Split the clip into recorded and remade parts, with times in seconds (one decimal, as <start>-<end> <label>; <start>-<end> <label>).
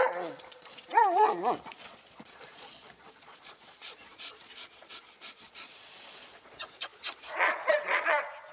0.0-8.5 remade